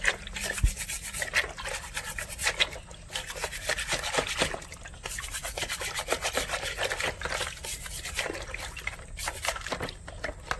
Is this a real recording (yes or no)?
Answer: yes